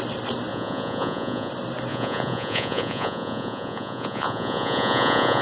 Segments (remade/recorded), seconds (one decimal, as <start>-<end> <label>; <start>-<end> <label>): 0.0-0.5 recorded; 0.5-1.5 remade; 1.5-1.9 recorded; 1.9-5.4 remade